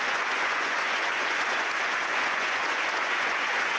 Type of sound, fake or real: fake